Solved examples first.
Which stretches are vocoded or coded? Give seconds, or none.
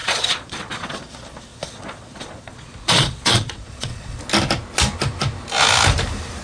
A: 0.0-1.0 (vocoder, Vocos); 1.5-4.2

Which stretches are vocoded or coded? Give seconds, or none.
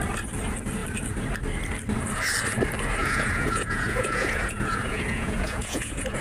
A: 3.0-6.2 (vocoder, Vocos)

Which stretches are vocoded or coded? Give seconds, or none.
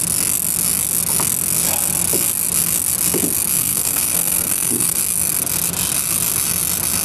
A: 3.6-5.0 (codec, SNAC)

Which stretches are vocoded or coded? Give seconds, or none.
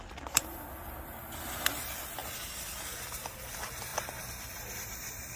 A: 3.9-5.4 (vocoder, BigVGAN v2)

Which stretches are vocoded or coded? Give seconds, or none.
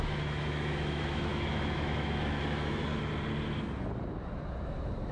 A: 0.0-2.9 (autoencoder, DAC-VAE); 4.5-5.1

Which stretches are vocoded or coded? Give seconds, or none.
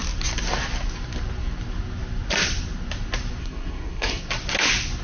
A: 3.4-4.2 (codec, SNAC)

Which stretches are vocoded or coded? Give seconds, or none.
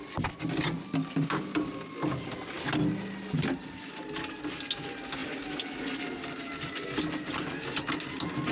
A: none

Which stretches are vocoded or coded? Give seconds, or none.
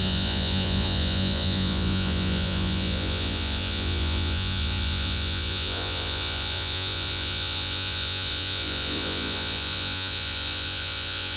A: 0.0-11.4 (vocoder, Vocos)